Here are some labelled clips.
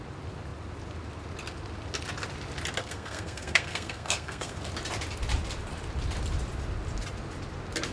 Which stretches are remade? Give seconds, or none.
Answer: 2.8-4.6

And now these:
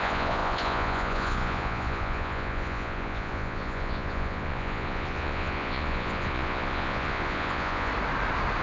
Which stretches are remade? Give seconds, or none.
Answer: 0.0-7.9

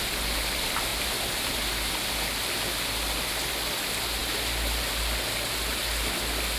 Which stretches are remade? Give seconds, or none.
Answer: none

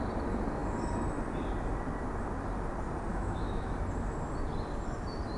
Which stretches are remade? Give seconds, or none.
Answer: 3.1-3.8

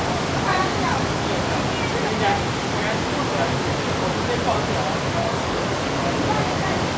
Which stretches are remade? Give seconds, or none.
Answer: 0.6-1.4; 5.2-5.8

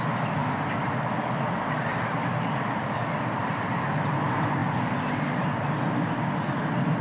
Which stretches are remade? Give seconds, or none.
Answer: 1.9-3.1